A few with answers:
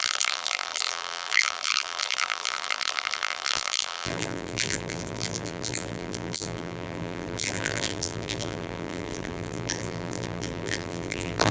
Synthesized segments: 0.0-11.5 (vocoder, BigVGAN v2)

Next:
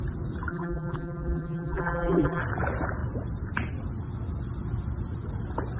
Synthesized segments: 0.5-2.4 (vocoder, BigVGAN v2)

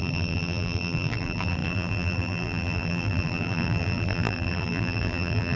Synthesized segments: 0.0-5.6 (vocoder, BigVGAN v2)